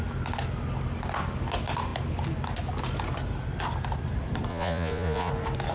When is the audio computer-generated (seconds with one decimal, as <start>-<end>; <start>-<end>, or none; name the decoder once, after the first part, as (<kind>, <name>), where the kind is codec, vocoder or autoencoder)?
4.5-5.3 (vocoder, Vocos)